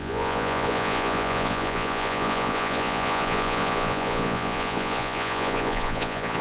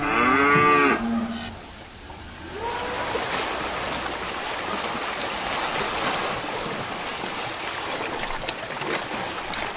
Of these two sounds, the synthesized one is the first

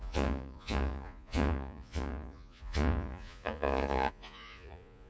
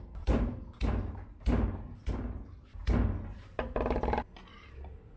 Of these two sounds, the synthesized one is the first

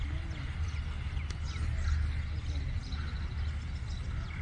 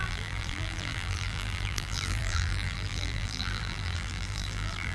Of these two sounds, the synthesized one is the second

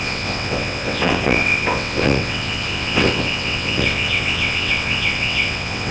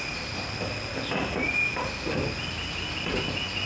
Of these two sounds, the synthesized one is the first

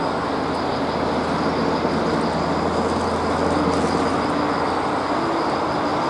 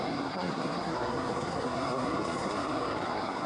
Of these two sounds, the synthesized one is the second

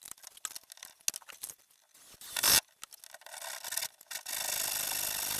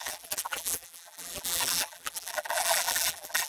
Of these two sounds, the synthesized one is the second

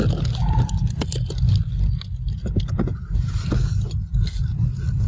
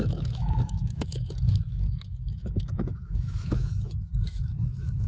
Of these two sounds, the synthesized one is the second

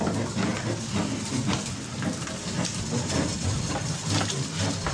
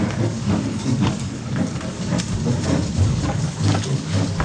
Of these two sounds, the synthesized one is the second